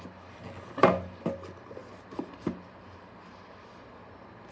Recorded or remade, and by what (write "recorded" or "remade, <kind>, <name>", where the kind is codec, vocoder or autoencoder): recorded